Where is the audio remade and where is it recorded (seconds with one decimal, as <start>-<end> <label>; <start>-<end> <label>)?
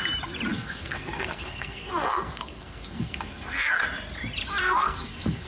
0.0-0.5 recorded; 0.5-3.8 remade; 3.8-4.6 recorded; 4.6-5.5 remade